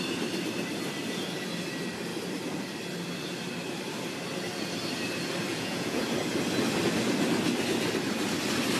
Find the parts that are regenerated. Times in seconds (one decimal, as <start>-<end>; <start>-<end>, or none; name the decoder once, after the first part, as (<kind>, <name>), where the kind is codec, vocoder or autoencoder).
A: 5.5-6.0 (vocoder, Vocos)